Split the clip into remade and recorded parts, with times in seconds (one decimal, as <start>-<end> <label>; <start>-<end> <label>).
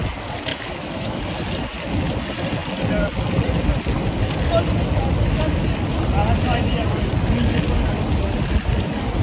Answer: 0.0-0.5 recorded; 0.5-1.2 remade; 1.2-9.2 recorded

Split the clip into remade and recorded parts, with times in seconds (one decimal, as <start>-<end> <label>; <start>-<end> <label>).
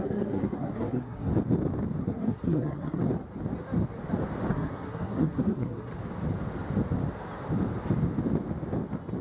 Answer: 0.0-1.3 remade; 1.3-2.0 recorded; 2.0-3.0 remade; 3.0-4.5 recorded; 4.5-5.9 remade; 5.9-9.2 recorded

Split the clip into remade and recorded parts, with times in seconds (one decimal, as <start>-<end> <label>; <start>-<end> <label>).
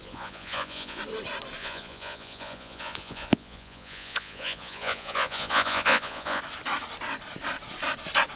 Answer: 0.0-1.0 remade; 1.0-1.6 recorded; 1.6-6.4 remade; 6.4-8.4 recorded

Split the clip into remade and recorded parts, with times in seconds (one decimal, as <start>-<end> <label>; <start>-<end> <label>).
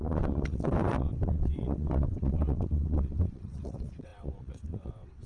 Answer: 0.0-5.3 remade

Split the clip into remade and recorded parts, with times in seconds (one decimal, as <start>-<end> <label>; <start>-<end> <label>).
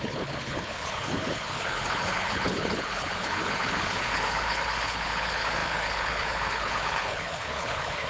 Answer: 0.0-8.1 remade